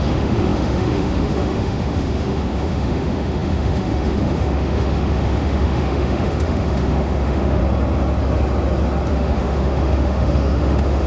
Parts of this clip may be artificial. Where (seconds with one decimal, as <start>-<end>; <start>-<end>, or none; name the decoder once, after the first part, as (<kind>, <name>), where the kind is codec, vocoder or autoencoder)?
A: 0.0-7.6 (autoencoder, DAC-VAE); 9.1-11.1